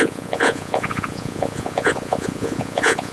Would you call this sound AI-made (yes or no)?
yes